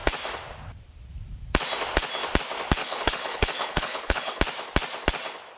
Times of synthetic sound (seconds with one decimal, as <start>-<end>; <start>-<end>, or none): 2.8-4.4